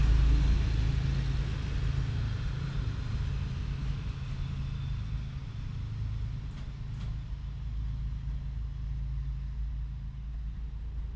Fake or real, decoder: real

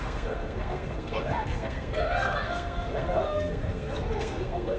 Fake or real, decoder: fake, codec, SNAC